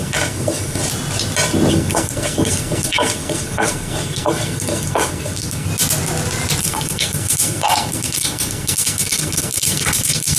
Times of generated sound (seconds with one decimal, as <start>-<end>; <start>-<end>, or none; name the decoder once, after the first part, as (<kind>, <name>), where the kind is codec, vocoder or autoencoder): 0.0-0.8 (codec, SNAC); 1.7-5.7; 6.6-10.4